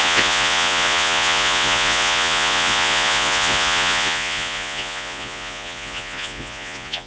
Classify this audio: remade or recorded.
remade